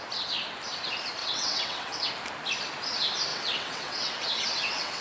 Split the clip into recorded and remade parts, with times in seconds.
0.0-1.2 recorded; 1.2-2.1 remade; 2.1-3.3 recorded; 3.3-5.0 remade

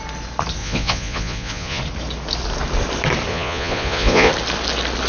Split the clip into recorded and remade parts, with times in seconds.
0.0-0.6 recorded; 0.6-1.8 remade; 1.8-3.3 recorded; 3.3-4.3 remade; 4.3-5.1 recorded